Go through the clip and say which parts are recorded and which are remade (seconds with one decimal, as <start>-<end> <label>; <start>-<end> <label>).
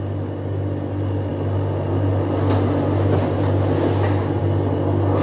0.0-5.2 recorded